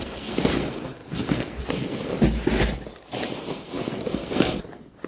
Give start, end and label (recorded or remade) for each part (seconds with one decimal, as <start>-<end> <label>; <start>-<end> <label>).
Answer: 0.0-2.1 remade; 2.1-3.5 recorded; 3.5-5.1 remade

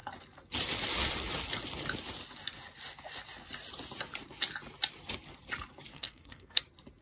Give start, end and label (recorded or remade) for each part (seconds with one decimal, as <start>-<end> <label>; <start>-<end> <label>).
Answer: 0.0-5.9 recorded; 5.9-6.6 remade; 6.6-7.0 recorded

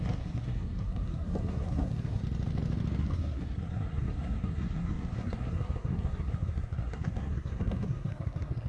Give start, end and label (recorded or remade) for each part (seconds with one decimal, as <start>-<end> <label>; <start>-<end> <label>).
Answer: 0.0-2.2 remade; 2.2-3.0 recorded; 3.0-8.7 remade